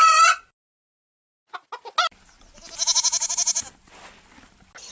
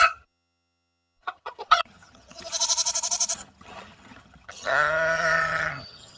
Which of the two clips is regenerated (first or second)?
second